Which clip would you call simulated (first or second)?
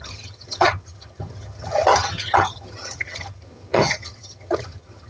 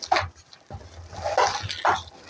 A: first